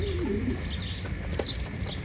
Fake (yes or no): no